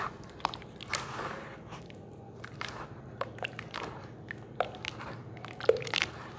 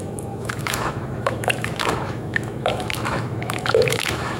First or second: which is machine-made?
second